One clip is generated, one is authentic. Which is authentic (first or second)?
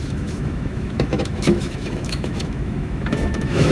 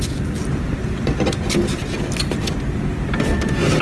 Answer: second